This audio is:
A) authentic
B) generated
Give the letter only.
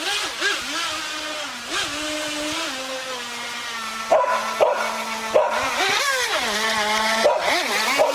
A